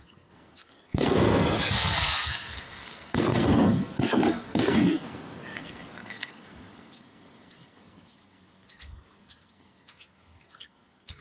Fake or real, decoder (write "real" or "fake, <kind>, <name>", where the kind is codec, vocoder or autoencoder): fake, codec, SNAC